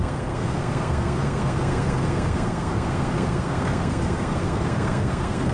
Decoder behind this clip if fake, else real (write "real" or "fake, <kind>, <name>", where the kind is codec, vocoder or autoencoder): fake, codec, SNAC